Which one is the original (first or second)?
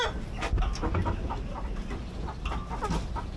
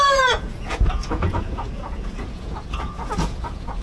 first